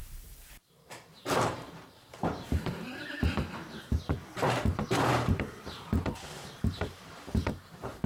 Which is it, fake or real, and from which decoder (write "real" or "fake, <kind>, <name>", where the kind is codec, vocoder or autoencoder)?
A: fake, vocoder, BigVGAN v2